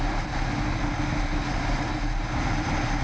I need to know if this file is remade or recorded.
recorded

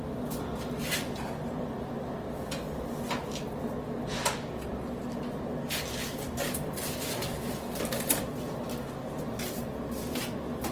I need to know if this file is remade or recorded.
recorded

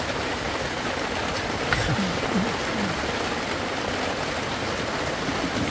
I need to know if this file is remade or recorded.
recorded